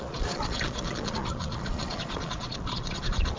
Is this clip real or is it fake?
fake